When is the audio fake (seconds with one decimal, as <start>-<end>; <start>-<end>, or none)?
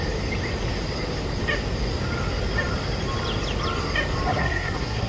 4.4-5.1